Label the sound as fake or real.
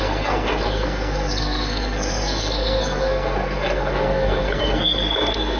fake